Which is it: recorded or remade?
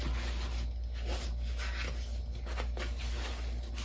recorded